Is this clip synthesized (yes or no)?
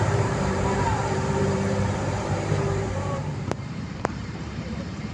yes